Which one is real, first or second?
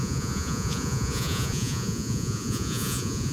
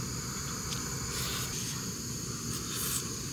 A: second